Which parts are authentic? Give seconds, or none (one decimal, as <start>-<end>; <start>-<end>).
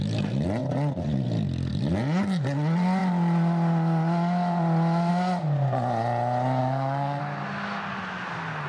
0.0-6.6; 7.2-8.7